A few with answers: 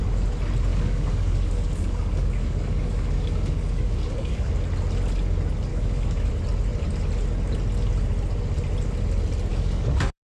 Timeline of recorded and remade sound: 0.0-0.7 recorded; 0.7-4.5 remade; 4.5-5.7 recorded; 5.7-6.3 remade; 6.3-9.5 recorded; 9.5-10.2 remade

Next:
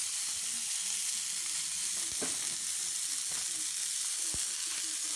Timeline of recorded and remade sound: 0.0-5.2 recorded

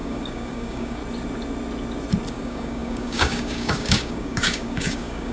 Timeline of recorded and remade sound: 0.0-1.0 remade; 1.0-2.3 recorded; 2.3-5.3 remade

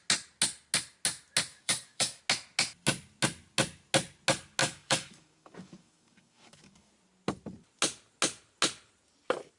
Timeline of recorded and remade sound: 0.0-1.5 recorded; 1.5-2.2 remade; 2.2-4.6 recorded; 4.6-6.9 remade; 6.9-9.6 recorded

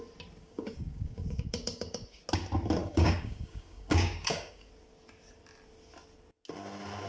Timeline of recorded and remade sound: 0.0-0.4 recorded; 0.4-2.2 remade; 2.2-2.8 recorded; 2.8-4.7 remade; 4.7-7.1 recorded